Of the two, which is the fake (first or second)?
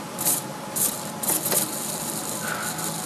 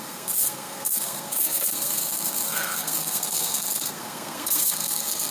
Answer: second